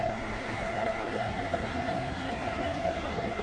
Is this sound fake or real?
fake